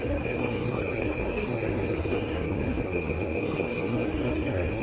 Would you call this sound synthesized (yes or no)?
yes